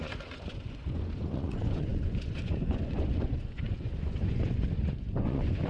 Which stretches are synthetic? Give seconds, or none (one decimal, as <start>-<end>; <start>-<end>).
0.0-5.7